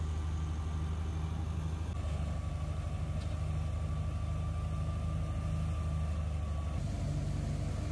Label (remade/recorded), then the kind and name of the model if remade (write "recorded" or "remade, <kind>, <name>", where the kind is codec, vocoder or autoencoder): recorded